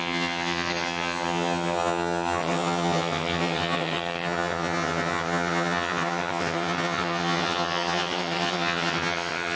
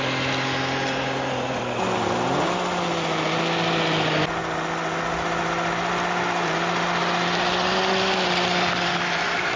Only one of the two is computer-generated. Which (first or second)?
first